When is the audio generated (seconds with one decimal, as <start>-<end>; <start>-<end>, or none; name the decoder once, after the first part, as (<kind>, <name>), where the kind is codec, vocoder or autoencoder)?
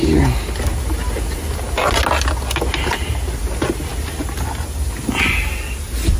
none